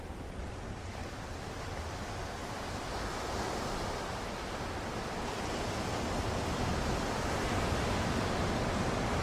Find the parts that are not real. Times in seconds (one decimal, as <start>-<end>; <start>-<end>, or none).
none